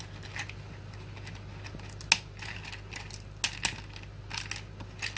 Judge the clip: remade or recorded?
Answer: recorded